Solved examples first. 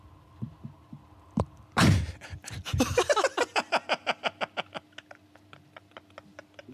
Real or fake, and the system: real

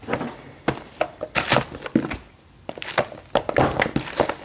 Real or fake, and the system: real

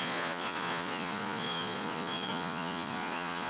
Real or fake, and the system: fake, vocoder, Vocos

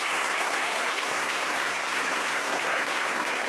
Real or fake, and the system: fake, codec, SNAC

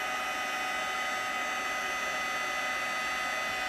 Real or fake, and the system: real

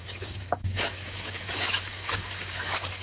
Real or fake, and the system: fake, codec, DAC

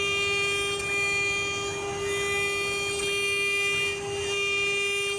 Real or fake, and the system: real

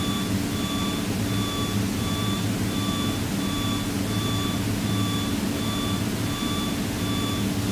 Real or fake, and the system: real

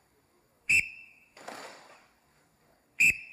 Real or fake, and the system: fake, codec, DAC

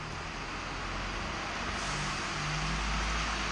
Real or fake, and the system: real